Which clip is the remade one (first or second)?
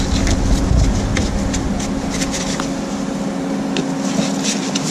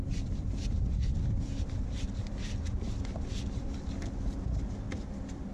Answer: second